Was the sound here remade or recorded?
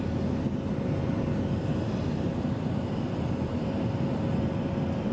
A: recorded